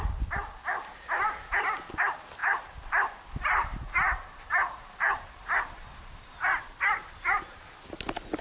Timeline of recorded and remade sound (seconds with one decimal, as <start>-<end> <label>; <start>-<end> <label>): 0.0-2.4 recorded; 2.4-7.4 remade; 7.4-8.4 recorded